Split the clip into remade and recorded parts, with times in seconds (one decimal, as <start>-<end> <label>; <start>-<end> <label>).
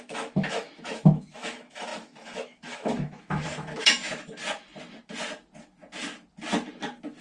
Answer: 0.0-4.4 remade; 4.4-7.2 recorded